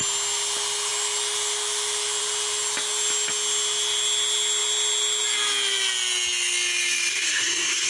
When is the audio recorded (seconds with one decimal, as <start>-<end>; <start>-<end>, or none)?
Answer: 0.0-7.1